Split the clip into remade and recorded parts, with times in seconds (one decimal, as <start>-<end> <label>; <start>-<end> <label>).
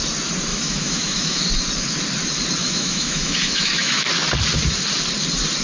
0.0-0.5 recorded; 0.5-1.4 remade; 1.4-2.6 recorded; 2.6-4.1 remade; 4.1-5.6 recorded